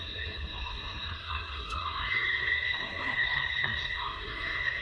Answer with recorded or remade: remade